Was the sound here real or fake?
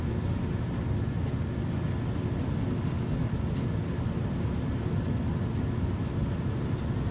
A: real